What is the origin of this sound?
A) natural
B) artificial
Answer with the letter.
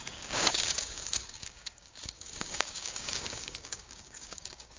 B